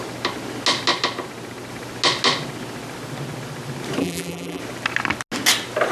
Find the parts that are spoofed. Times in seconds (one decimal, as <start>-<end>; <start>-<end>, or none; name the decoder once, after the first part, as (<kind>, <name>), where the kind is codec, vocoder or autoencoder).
4.0-4.6 (vocoder, BigVGAN v2)